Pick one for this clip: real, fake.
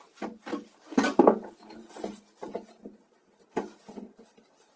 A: real